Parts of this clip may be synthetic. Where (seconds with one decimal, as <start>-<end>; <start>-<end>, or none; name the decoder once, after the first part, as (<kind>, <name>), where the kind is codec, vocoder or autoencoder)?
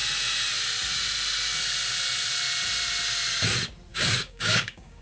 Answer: 3.9-5.0 (codec, DAC)